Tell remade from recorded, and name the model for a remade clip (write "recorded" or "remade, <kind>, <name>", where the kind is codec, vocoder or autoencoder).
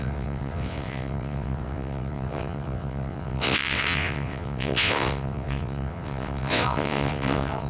remade, vocoder, WaveNeXt